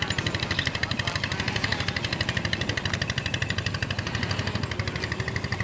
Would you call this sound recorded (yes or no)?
yes